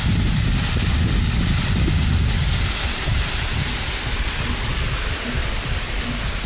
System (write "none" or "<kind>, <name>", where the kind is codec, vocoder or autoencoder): none